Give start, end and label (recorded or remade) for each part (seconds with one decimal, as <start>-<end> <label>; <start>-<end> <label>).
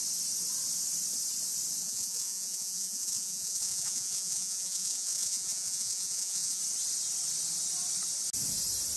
0.0-1.8 recorded; 1.8-6.6 remade; 6.6-9.0 recorded